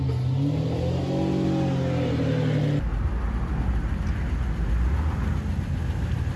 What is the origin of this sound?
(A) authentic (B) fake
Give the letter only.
A